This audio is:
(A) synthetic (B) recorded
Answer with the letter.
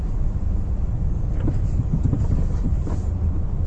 B